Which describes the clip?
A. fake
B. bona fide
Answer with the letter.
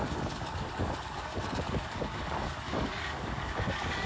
A